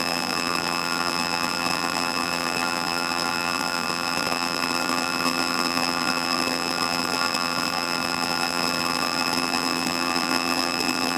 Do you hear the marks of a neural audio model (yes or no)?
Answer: yes